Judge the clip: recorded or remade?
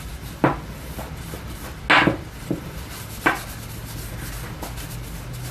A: recorded